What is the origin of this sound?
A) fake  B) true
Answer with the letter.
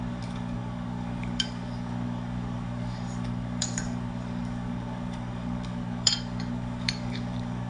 A